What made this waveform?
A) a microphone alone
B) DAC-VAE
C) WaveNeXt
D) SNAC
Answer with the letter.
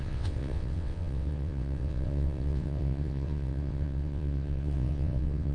C